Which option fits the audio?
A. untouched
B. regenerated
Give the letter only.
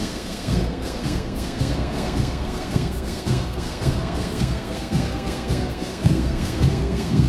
B